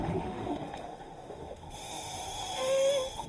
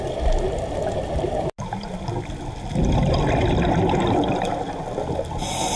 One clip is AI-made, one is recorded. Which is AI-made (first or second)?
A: first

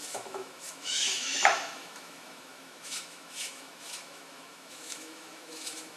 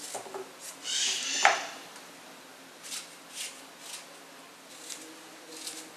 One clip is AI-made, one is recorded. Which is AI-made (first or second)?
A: first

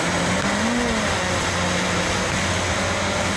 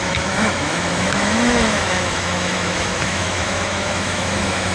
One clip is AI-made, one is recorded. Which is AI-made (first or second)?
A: second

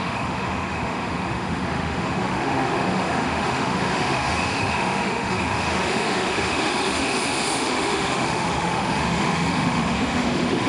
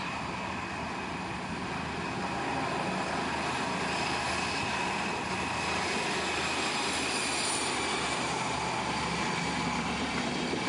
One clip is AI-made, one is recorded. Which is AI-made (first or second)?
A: first